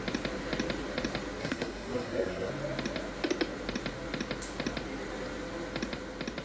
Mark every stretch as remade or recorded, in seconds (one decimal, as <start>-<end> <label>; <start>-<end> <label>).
0.0-1.4 recorded; 1.4-2.5 remade; 2.5-6.4 recorded